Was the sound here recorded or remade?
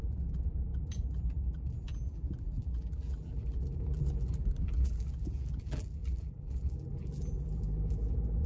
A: remade